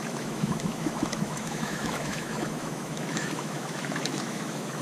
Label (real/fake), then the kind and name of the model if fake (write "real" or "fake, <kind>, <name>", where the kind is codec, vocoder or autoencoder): fake, autoencoder, DAC-VAE